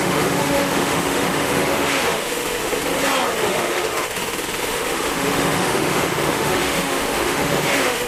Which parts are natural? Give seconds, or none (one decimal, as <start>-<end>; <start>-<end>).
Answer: 2.8-3.4